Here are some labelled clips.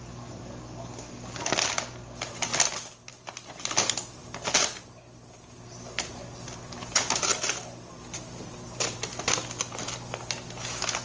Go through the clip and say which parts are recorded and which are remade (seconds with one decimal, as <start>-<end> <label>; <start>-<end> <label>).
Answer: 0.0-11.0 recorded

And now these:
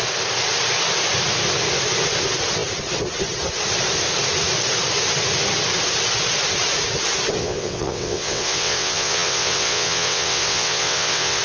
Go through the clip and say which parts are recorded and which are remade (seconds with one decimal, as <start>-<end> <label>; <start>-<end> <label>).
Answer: 0.0-7.4 recorded; 7.4-11.4 remade

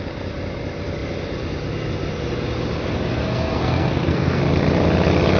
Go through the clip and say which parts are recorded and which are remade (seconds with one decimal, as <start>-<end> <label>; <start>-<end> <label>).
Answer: 0.0-3.2 recorded; 3.2-4.4 remade; 4.4-5.4 recorded